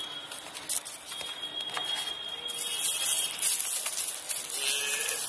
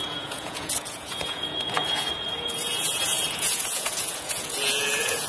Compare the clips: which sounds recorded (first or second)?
first